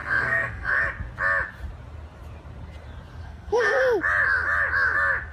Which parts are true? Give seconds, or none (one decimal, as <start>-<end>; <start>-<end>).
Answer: 0.8-3.2; 3.8-5.3